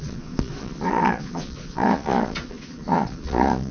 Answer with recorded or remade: remade